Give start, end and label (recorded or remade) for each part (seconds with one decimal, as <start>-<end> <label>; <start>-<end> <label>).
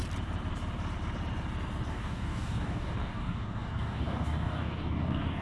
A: 0.0-1.9 recorded; 1.9-5.4 remade